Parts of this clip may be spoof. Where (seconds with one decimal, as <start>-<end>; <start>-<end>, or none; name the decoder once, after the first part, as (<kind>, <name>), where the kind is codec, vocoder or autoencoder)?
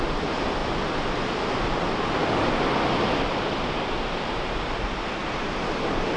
none